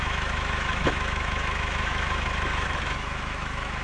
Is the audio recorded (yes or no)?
no